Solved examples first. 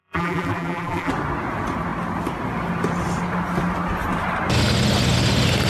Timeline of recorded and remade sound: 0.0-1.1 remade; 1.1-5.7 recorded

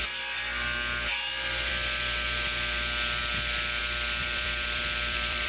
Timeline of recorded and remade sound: 0.0-4.2 recorded; 4.2-5.5 remade

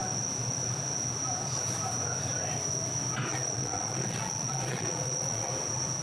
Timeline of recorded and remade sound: 0.0-3.3 recorded; 3.3-5.5 remade; 5.5-6.0 recorded

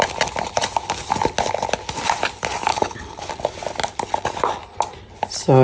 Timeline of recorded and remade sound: 0.0-2.7 recorded; 2.7-3.3 remade; 3.3-5.6 recorded

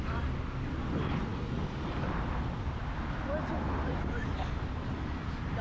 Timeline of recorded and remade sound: 0.0-5.6 recorded

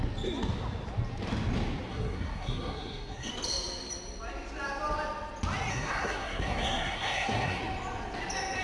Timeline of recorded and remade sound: 0.0-1.9 recorded; 1.9-3.3 remade; 3.3-5.7 recorded; 5.7-7.6 remade; 7.6-8.6 recorded

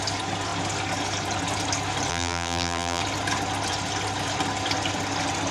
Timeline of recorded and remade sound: 0.0-2.1 recorded; 2.1-3.0 remade; 3.0-5.5 recorded